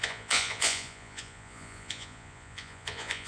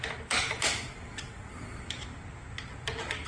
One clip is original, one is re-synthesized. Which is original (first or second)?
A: second